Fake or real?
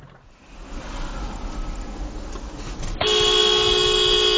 real